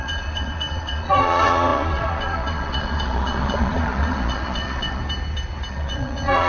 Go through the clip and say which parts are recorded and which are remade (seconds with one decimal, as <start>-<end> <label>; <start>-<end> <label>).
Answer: 0.0-5.0 remade; 5.0-5.7 recorded; 5.7-6.5 remade